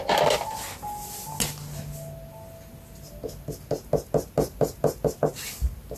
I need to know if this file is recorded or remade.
recorded